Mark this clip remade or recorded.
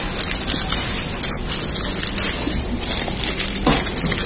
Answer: recorded